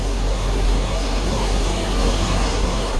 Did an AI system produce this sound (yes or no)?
yes